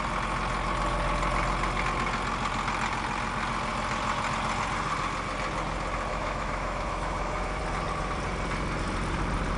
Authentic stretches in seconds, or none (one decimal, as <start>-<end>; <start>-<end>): 0.0-6.1; 7.6-9.6